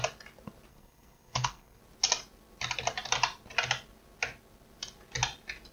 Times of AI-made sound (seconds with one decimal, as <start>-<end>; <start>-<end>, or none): 0.7-1.8